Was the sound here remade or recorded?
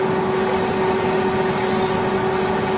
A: recorded